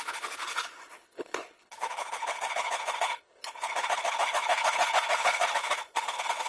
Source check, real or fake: fake